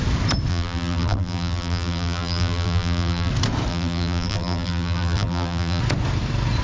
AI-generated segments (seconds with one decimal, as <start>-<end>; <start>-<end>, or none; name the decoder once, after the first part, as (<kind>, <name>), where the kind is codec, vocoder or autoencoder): 0.5-3.3 (vocoder, BigVGAN v2); 3.7-5.8